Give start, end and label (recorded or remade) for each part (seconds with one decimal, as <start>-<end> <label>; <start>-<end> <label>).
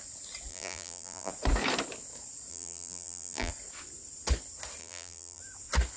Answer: 0.0-0.5 recorded; 0.5-1.3 remade; 1.3-2.5 recorded; 2.5-3.5 remade; 3.5-4.8 recorded; 4.8-5.4 remade; 5.4-6.0 recorded